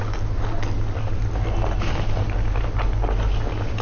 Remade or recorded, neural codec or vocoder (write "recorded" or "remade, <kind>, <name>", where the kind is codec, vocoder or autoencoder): recorded